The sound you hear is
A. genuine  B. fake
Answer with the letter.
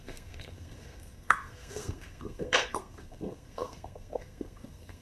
B